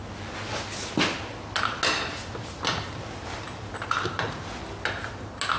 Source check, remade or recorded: recorded